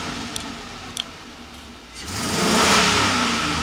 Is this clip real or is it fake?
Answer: fake